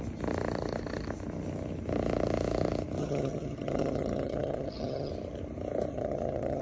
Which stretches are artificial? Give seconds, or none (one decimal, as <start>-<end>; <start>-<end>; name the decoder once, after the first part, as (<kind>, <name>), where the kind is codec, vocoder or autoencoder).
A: 3.0-5.1 (vocoder, HiFi-GAN); 5.9-6.6